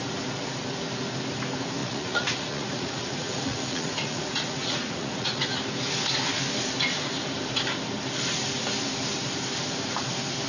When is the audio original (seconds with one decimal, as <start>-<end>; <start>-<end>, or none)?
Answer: 0.0-1.8; 5.6-10.5